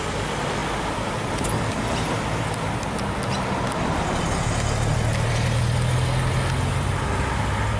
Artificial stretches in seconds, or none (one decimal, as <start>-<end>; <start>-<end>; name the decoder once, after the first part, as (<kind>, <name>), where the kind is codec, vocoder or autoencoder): none